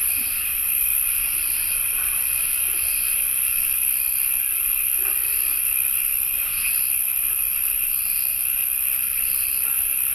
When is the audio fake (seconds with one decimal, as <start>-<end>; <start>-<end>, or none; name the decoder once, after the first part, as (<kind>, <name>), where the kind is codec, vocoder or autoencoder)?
0.0-2.0 (vocoder, BigVGAN v2)